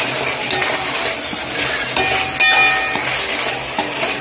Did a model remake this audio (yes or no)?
no